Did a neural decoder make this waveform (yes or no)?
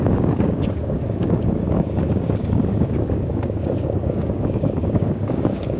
yes